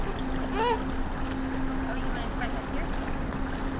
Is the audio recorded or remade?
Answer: recorded